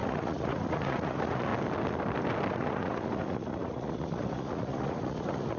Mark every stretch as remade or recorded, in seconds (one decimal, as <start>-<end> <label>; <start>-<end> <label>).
0.0-1.5 remade; 1.5-2.5 recorded; 2.5-5.6 remade